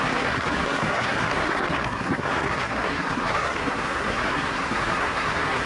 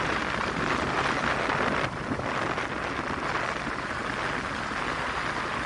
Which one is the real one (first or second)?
second